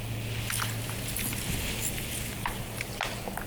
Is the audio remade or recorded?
recorded